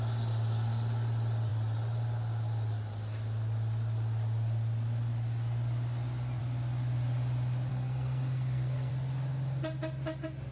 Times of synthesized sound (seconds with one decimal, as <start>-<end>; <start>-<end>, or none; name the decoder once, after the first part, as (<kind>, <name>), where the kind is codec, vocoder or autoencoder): 7.7-8.9 (codec, SNAC)